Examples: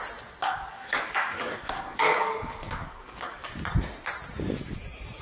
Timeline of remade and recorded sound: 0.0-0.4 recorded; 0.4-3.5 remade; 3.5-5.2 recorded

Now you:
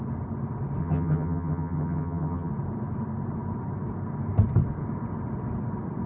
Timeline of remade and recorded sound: 0.0-0.8 recorded; 0.8-2.5 remade; 2.5-6.1 recorded

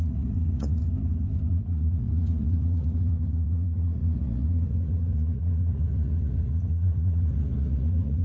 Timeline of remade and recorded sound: 0.0-0.8 remade; 0.8-1.5 recorded; 1.5-8.2 remade